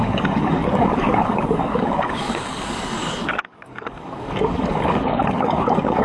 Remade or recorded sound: remade